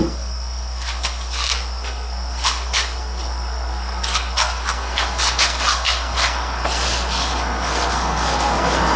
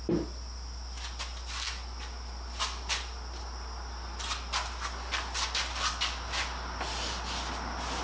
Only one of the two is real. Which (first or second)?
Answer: second